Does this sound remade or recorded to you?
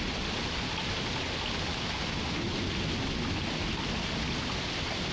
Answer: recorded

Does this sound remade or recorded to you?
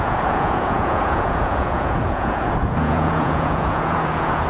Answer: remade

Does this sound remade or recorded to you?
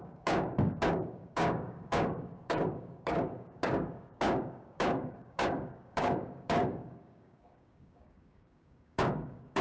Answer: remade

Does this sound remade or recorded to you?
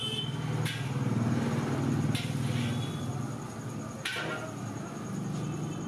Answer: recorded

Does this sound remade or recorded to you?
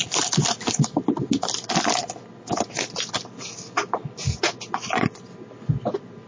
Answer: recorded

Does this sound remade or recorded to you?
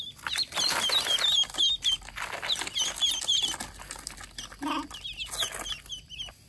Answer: recorded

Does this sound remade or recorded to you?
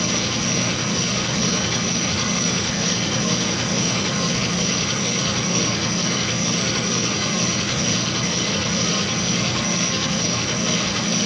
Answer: remade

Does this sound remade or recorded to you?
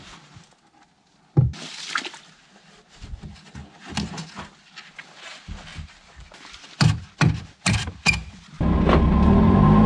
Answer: recorded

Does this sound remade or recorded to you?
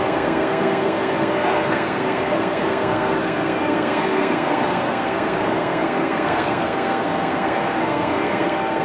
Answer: remade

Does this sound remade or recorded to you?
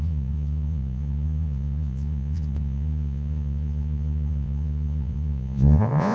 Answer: remade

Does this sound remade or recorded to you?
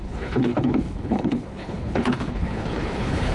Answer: remade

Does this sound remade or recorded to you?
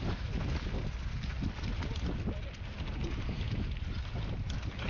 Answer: recorded